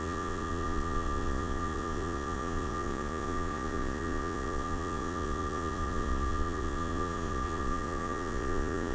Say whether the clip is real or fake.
fake